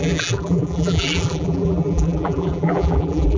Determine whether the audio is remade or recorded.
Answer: remade